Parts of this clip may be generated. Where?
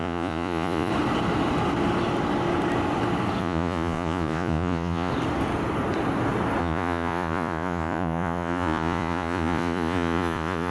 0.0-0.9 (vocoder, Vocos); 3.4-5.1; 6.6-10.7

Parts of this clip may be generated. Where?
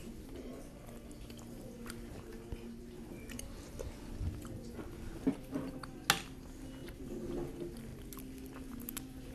none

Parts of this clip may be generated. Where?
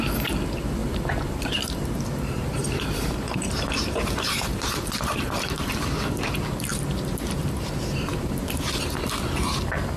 0.8-5.8 (vocoder, BigVGAN v2); 6.7-9.0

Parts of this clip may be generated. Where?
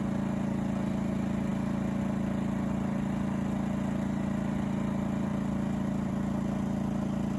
none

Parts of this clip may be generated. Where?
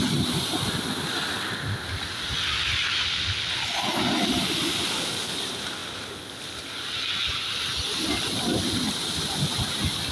none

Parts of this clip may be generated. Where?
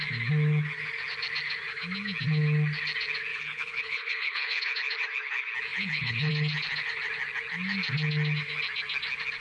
3.3-4.6 (codec, HILCodec); 5.7-6.3